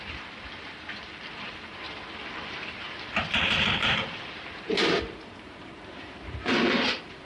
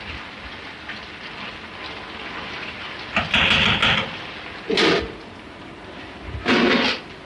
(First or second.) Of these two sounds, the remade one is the first